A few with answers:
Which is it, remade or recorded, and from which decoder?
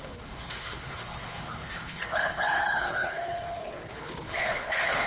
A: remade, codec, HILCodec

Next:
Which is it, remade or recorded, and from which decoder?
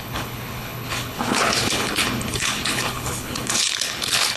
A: remade, codec, HILCodec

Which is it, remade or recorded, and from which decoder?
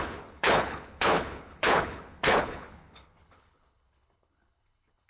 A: remade, codec, HILCodec